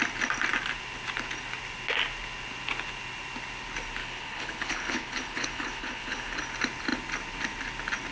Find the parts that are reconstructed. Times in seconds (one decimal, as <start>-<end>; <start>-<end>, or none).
4.0-6.4